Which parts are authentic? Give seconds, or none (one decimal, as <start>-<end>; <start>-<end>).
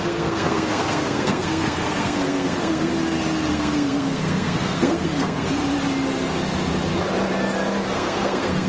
2.9-3.5; 5.6-7.9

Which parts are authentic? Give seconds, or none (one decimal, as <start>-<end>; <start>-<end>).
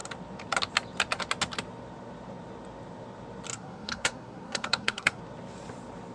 0.0-3.5; 5.2-6.1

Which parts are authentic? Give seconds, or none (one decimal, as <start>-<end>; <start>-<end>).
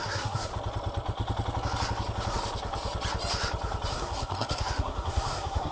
0.5-3.9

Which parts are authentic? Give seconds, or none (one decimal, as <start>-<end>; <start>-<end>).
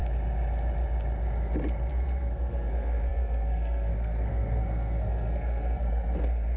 0.0-1.9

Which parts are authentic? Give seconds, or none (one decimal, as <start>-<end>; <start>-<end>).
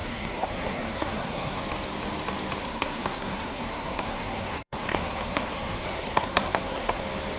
1.6-2.6; 7.0-7.4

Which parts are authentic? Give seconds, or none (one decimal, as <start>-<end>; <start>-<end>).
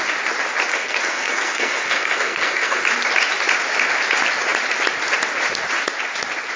0.0-0.7; 2.8-6.6